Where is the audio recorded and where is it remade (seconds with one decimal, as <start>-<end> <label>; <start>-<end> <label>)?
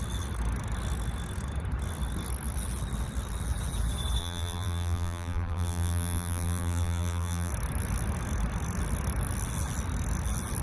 0.0-4.2 recorded; 4.2-7.5 remade; 7.5-10.6 recorded